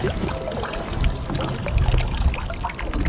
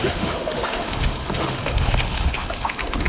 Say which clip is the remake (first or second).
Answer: second